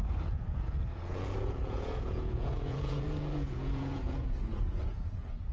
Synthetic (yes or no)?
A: yes